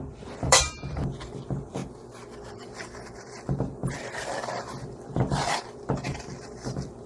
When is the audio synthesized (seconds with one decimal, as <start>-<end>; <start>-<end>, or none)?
0.0-1.8; 2.5-7.1